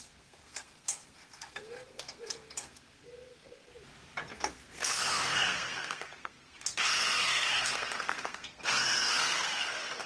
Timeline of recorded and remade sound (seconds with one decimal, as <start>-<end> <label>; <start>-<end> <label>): 0.0-3.7 remade; 3.7-4.3 recorded; 4.3-10.1 remade